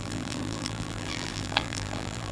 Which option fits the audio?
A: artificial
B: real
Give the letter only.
A